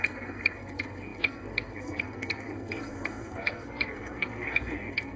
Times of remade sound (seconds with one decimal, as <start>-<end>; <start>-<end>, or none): 0.0-5.2